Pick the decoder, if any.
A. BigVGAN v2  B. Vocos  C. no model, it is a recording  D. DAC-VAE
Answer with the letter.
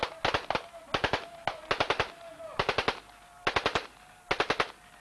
C